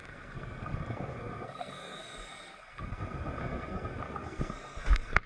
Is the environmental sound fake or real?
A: fake